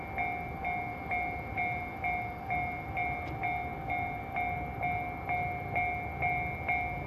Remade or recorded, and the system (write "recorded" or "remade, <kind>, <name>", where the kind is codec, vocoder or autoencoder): recorded